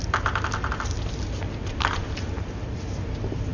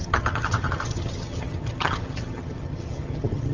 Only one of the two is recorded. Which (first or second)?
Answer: first